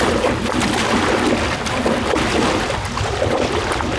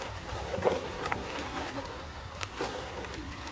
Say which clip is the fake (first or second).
second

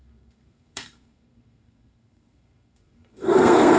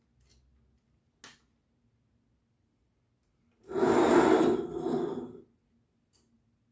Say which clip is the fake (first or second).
first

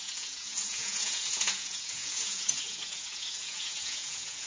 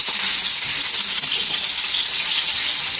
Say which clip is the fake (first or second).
first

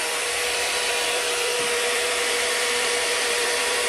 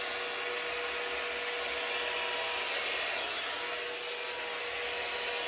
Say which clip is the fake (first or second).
first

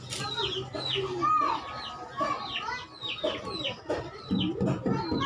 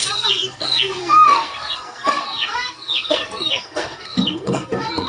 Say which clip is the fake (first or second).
second